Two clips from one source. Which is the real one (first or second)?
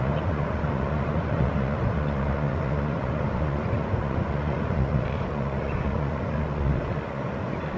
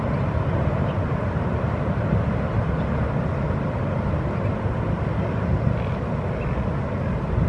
second